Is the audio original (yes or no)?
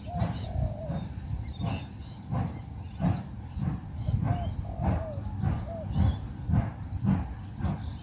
yes